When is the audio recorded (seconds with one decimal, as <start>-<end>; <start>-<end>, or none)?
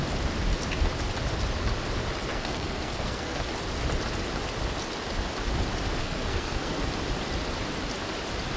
0.0-2.3; 3.5-6.0; 6.9-8.6